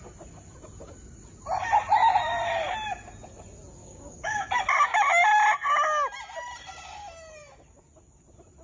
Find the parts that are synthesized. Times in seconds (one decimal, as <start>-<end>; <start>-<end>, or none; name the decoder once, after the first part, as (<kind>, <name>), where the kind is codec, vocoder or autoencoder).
3.8-4.5 (codec, DAC)